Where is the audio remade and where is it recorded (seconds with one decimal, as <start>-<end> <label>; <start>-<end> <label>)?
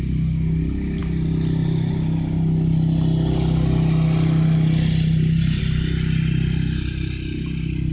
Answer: 0.0-7.9 recorded